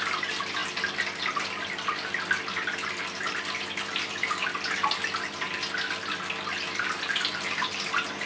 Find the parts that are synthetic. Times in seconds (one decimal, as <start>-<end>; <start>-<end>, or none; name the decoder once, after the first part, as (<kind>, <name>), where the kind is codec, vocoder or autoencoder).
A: none